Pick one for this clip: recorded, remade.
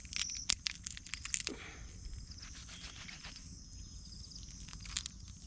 recorded